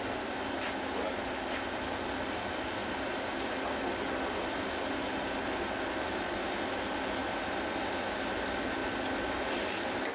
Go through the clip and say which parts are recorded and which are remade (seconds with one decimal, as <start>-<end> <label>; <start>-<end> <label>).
0.0-10.1 recorded